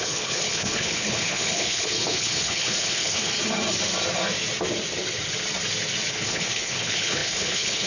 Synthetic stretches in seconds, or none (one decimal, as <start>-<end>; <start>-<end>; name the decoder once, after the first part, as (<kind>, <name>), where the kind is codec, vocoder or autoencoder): 0.0-3.3 (codec, HILCodec); 6.1-7.9